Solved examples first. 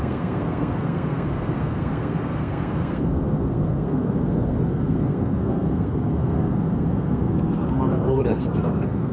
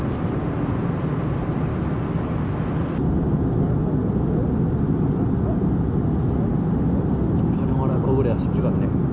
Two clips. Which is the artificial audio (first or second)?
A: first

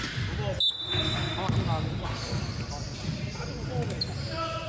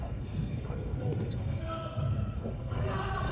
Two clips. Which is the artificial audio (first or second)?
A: second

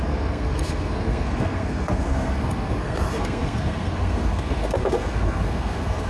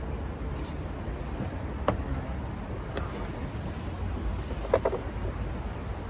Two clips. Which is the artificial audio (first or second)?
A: first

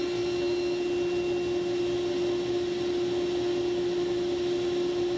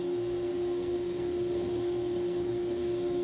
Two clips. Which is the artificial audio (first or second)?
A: second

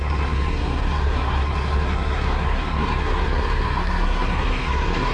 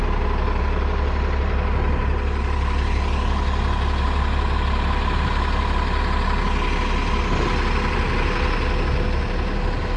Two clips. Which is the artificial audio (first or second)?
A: first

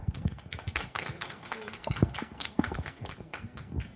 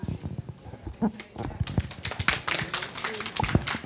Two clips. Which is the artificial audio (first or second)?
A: first